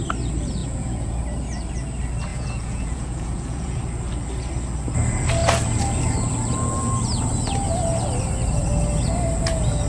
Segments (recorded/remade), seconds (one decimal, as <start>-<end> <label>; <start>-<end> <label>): 0.0-0.6 recorded; 0.6-1.2 remade; 1.2-2.3 recorded; 2.3-3.8 remade; 3.8-9.9 recorded